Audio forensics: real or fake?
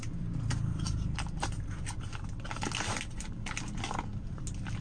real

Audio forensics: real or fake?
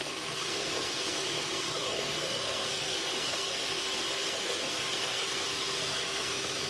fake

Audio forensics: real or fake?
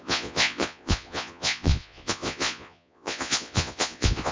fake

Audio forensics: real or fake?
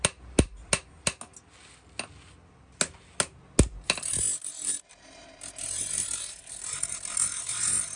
real